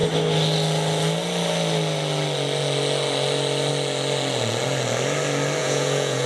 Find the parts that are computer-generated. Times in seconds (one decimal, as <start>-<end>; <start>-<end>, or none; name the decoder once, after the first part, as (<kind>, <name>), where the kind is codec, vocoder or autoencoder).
5.6-6.3 (vocoder, Vocos)